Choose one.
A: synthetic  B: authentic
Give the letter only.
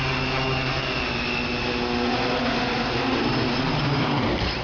B